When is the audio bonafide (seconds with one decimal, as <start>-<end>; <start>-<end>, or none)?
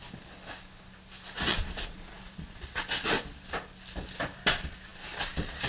0.0-1.5; 2.8-5.7